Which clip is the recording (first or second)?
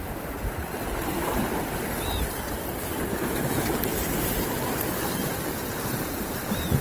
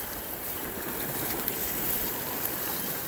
first